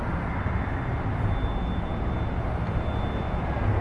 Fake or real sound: real